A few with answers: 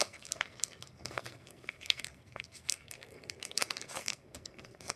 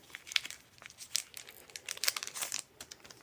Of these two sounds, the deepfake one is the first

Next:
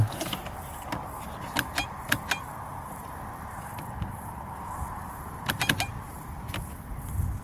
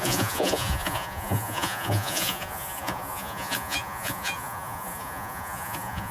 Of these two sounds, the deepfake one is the second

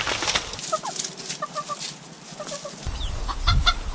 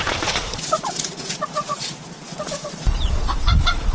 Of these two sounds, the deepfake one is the second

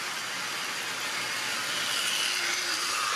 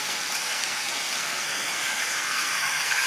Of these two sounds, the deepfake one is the second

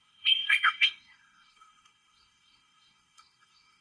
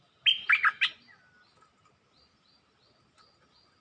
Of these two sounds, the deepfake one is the first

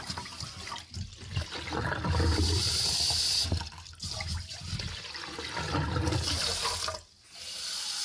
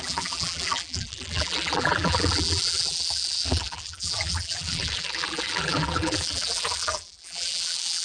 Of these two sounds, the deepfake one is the second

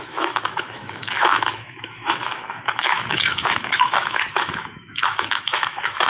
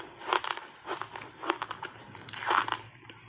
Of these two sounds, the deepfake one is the first